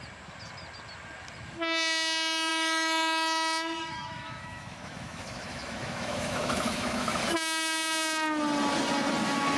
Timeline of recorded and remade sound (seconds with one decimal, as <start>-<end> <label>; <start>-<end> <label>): 0.0-2.5 recorded; 2.5-7.2 remade; 7.2-9.6 recorded